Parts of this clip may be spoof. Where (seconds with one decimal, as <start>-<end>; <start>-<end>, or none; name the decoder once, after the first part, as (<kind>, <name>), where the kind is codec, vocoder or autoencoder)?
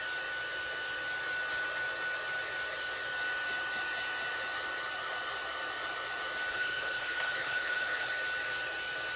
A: 6.5-8.1 (codec, HILCodec)